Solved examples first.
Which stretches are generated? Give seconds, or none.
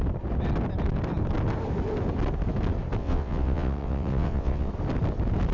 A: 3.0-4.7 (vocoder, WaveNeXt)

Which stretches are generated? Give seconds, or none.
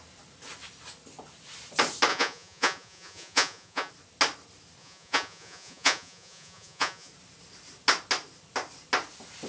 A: 2.1-3.9 (vocoder, Vocos); 4.8-7.1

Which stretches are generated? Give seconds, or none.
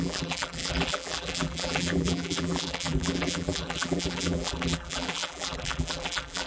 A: 0.0-6.5 (vocoder, BigVGAN v2)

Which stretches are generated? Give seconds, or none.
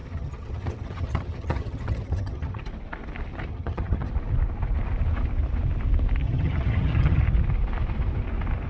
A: 0.0-2.6 (vocoder, HiFi-GAN); 3.5-4.1; 6.2-7.2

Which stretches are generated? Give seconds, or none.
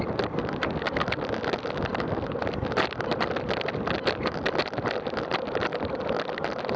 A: none